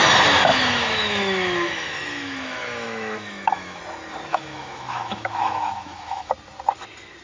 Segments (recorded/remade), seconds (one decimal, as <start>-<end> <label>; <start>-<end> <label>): 0.0-0.5 recorded; 0.5-3.8 remade; 3.8-4.3 recorded; 4.3-6.3 remade; 6.3-7.2 recorded